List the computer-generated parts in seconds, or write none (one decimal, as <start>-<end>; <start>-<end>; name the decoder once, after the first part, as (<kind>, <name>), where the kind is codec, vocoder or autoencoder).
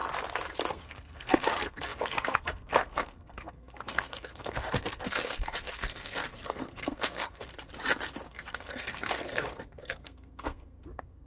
0.7-7.5 (codec, SNAC); 8.3-11.3